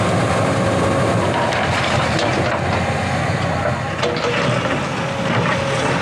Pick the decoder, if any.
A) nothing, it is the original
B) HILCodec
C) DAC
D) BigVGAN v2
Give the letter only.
A